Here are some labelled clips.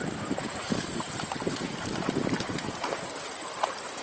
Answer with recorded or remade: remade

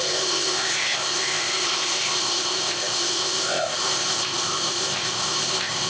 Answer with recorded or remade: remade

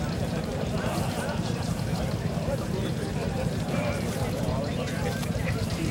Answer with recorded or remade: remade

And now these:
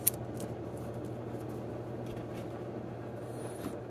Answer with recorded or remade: recorded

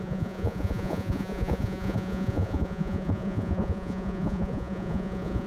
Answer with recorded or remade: remade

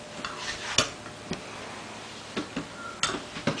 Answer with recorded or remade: recorded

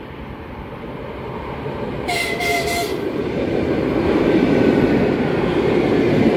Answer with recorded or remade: remade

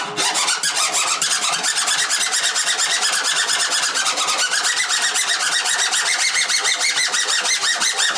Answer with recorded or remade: recorded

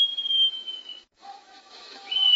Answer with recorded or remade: remade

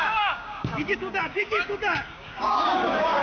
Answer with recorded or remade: remade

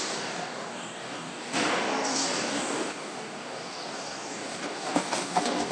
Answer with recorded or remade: remade